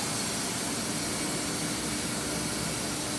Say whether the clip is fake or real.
real